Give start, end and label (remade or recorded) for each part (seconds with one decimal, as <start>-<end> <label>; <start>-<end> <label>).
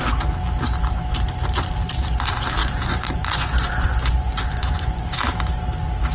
0.0-2.6 recorded; 2.6-5.2 remade; 5.2-6.1 recorded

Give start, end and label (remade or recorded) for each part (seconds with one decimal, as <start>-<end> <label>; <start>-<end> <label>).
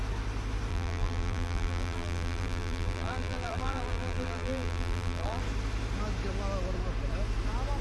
0.0-0.7 recorded; 0.7-5.4 remade; 5.4-7.8 recorded